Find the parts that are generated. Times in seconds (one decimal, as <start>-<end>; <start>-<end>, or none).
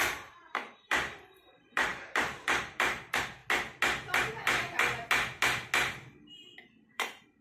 0.0-3.4; 6.9-7.4